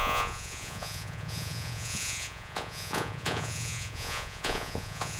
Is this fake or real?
fake